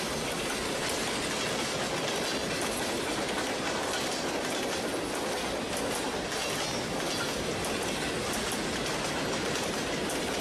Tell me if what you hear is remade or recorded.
recorded